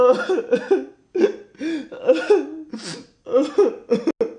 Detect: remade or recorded recorded